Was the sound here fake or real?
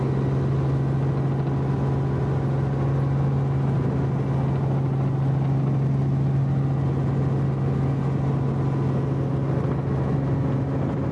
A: real